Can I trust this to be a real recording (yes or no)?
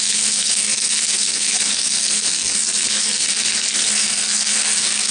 no